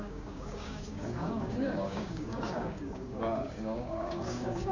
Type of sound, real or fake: fake